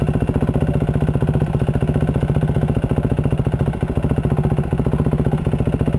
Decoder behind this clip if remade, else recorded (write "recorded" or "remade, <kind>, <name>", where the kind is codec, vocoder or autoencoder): recorded